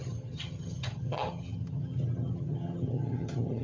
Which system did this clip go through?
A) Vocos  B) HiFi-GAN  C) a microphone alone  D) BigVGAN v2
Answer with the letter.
B